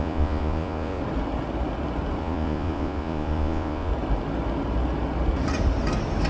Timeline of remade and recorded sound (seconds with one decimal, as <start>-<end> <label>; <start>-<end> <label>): 0.0-1.0 remade; 1.0-2.2 recorded; 2.2-3.9 remade; 3.9-6.3 recorded